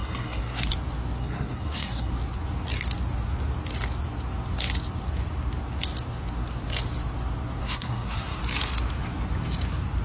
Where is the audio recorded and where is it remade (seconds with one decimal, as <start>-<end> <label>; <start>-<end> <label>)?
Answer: 0.0-0.7 remade; 0.7-1.2 recorded; 1.2-2.1 remade; 2.1-7.6 recorded; 7.6-8.4 remade; 8.4-10.0 recorded